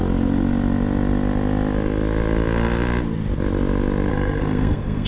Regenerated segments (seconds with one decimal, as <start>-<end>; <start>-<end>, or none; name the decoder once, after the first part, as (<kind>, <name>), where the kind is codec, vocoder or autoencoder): 4.1-5.1 (codec, SNAC)